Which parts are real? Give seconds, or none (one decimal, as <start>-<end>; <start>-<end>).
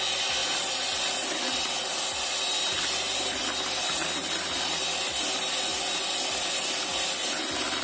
0.0-7.8